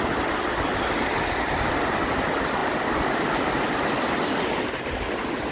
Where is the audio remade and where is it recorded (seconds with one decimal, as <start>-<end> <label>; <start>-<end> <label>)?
0.0-5.5 recorded